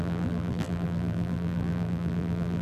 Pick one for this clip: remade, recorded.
remade